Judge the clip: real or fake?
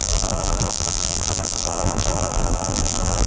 fake